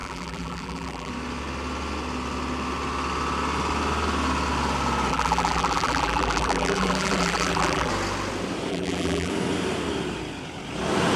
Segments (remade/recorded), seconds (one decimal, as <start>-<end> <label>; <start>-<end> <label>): 0.0-1.1 remade; 1.1-5.1 recorded; 5.1-7.9 remade; 7.9-8.7 recorded; 8.7-9.3 remade; 9.3-11.2 recorded